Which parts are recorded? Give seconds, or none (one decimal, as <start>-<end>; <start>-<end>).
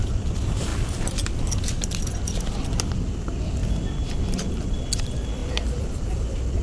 0.0-6.6